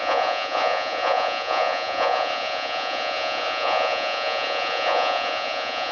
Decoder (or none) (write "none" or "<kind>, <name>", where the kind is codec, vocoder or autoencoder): vocoder, Vocos